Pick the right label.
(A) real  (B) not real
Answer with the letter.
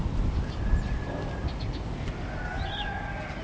A